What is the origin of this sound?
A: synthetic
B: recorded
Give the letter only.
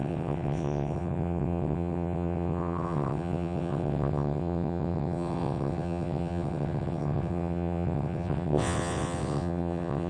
A